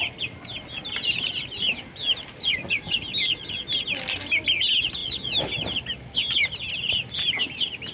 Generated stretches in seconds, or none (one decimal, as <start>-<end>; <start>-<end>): none